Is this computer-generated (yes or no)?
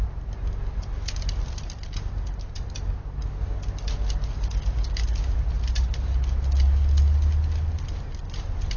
no